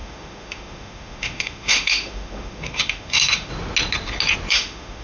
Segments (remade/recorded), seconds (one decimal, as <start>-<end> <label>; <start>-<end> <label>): 0.0-3.5 remade; 3.5-4.5 recorded; 4.5-5.0 remade